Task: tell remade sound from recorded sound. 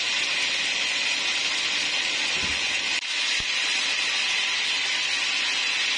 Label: recorded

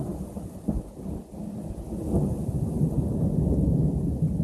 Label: recorded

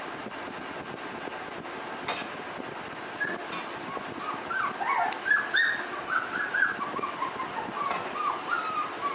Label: recorded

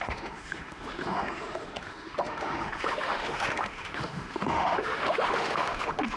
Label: remade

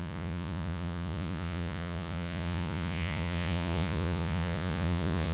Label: remade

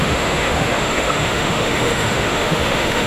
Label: remade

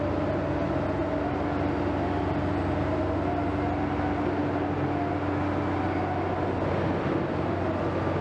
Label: recorded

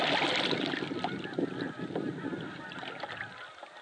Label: recorded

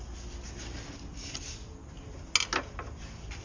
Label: recorded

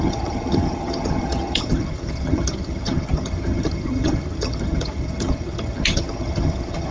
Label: remade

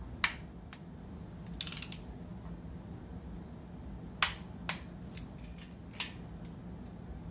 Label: recorded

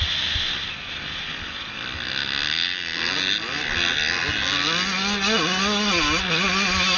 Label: recorded